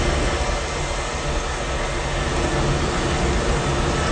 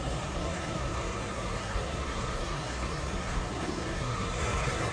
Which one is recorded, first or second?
first